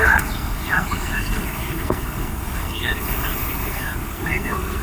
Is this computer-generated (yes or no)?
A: yes